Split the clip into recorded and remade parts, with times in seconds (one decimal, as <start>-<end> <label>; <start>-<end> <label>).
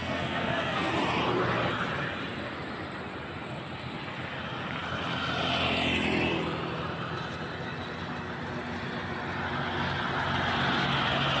0.0-0.9 remade; 0.9-11.4 recorded